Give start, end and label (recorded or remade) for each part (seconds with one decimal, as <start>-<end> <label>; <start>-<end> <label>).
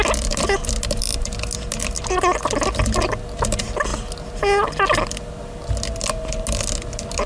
0.0-7.3 recorded